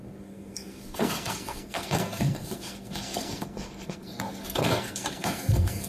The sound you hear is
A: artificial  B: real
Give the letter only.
A